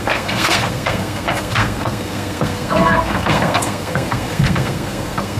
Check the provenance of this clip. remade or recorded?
remade